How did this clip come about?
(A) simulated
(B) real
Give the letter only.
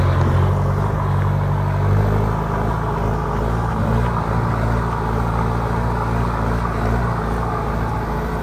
B